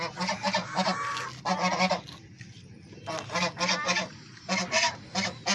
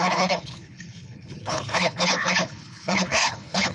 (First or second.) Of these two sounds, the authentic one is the first